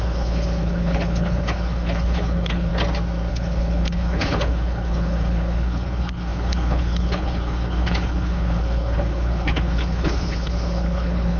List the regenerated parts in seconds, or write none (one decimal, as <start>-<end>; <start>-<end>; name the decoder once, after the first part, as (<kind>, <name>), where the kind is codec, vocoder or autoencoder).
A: 0.0-2.7 (codec, HILCodec); 3.3-11.4